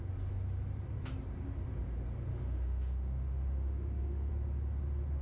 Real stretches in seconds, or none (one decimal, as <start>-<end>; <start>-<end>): 0.0-2.3; 4.3-5.2